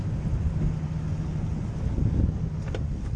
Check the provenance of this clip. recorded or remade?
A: recorded